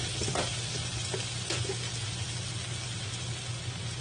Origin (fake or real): real